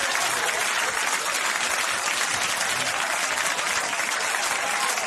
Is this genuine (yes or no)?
yes